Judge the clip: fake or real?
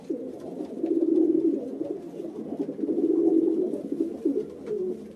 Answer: real